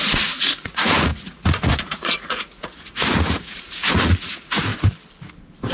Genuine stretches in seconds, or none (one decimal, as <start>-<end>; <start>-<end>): 4.7-5.7